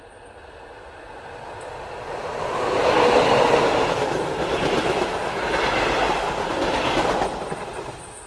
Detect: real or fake real